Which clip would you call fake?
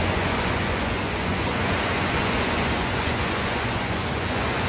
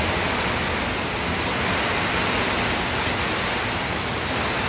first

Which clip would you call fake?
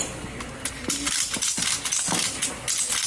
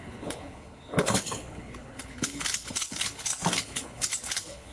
second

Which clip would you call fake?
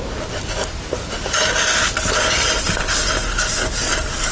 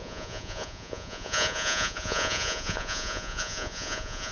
second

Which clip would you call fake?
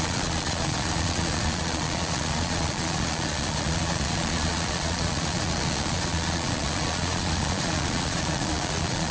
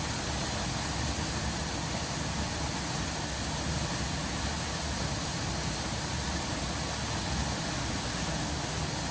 first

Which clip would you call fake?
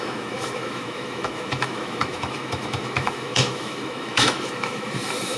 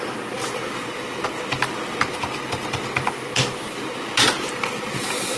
first